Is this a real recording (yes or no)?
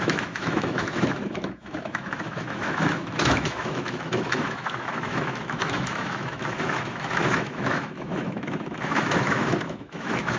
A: no